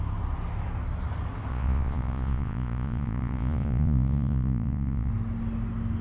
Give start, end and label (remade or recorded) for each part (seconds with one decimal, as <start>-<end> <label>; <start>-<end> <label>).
0.0-1.5 recorded; 1.5-5.1 remade; 5.1-6.0 recorded